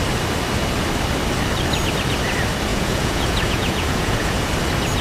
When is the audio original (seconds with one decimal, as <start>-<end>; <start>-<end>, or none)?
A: 0.0-2.7; 4.5-5.0